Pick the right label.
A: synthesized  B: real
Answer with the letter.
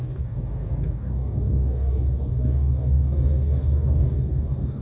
A